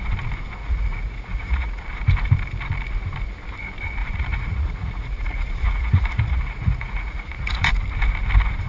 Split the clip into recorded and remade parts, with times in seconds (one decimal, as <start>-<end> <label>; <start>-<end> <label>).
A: 0.0-0.6 recorded; 0.6-1.8 remade; 1.8-4.0 recorded; 4.0-7.8 remade; 7.8-8.7 recorded

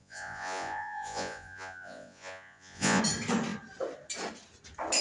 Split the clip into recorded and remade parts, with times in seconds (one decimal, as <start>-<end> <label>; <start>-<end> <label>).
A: 0.0-3.0 remade; 3.0-5.0 recorded